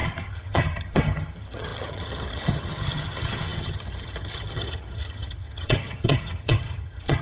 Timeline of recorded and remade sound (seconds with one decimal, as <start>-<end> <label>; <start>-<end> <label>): 0.0-7.2 remade